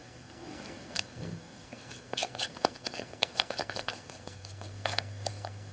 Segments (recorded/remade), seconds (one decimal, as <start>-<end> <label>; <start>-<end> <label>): 0.0-5.7 remade